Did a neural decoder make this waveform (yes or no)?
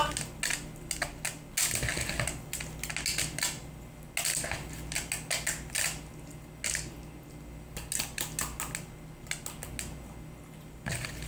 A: no